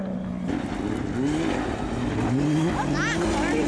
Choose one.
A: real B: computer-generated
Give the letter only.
A